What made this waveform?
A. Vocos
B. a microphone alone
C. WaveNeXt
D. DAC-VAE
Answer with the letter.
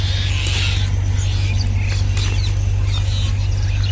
B